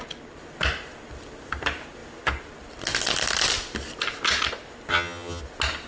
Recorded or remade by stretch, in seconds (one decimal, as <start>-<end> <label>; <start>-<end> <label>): 0.0-4.9 recorded; 4.9-5.4 remade; 5.4-5.9 recorded